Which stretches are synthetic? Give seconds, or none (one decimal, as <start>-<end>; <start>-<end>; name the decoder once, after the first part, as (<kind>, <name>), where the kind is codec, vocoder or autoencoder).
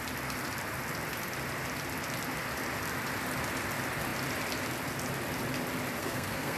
6.0-6.6 (codec, SNAC)